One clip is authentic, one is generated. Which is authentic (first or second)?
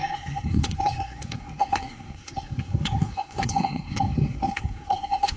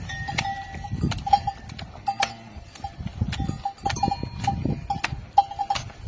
second